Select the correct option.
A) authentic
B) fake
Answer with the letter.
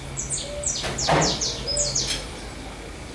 A